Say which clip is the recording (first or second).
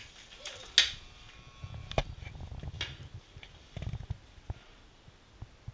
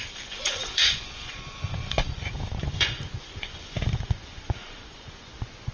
first